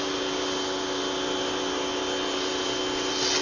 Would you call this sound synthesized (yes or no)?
no